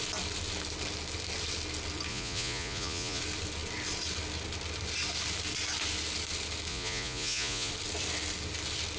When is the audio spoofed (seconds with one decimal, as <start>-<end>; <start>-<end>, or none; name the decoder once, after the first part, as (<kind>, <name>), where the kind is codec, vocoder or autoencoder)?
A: 2.1-3.2 (vocoder, Vocos); 6.7-7.7